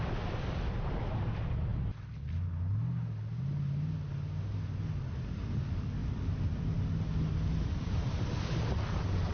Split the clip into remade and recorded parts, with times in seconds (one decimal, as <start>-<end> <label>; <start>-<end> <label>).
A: 0.0-9.3 recorded